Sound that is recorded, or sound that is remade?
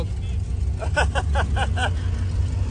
recorded